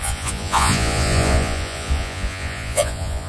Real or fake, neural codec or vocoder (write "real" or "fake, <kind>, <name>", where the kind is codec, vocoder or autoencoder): fake, vocoder, Vocos